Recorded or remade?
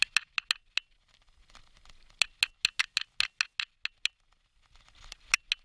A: recorded